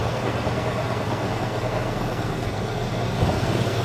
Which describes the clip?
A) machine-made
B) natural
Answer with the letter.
A